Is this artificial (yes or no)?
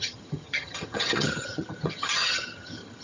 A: yes